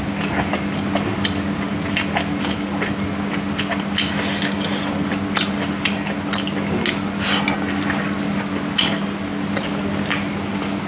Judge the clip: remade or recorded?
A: recorded